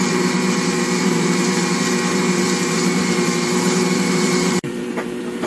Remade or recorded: remade